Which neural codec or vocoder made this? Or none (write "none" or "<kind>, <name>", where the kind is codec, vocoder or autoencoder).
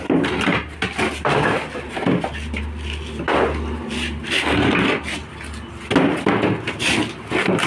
none